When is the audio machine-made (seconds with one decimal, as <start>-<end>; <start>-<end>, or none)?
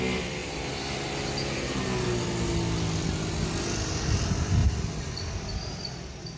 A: 0.4-1.8; 4.6-5.1